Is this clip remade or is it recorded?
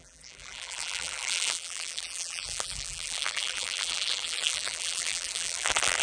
remade